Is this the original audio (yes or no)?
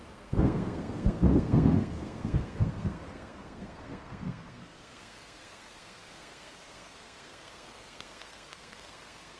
no